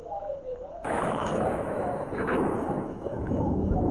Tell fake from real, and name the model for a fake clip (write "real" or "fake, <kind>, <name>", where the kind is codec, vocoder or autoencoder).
fake, autoencoder, DAC-VAE